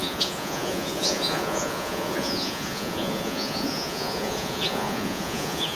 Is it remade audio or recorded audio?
remade